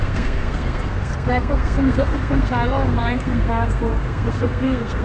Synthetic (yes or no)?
yes